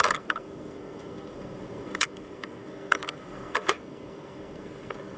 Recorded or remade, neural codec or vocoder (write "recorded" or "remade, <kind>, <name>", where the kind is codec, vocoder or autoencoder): remade, codec, SNAC